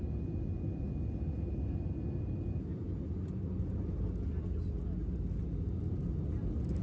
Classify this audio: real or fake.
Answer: real